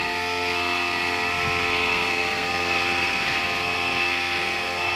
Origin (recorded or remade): remade